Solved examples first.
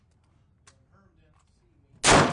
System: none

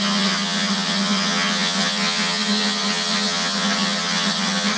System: vocoder, HiFi-GAN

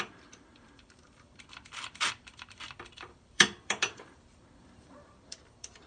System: vocoder, BigVGAN v2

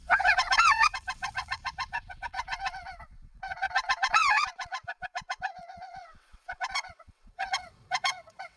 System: vocoder, WaveNeXt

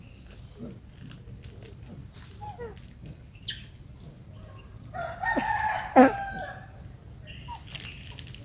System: none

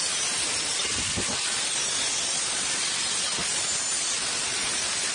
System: none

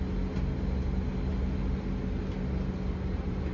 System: none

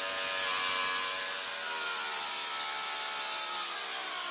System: none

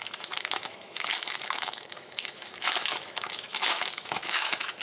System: autoencoder, DAC-VAE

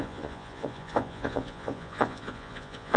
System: vocoder, Vocos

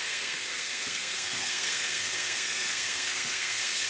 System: codec, SNAC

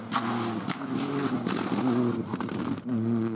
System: none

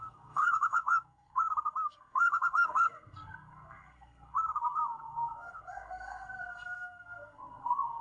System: codec, SNAC